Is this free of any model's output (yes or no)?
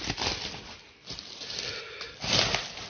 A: yes